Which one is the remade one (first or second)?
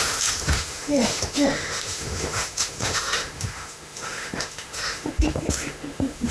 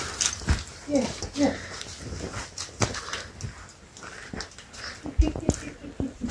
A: first